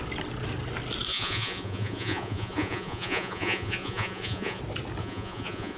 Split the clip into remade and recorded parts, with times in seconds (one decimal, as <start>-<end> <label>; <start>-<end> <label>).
0.0-1.1 recorded; 1.1-4.6 remade; 4.6-5.0 recorded; 5.0-5.8 remade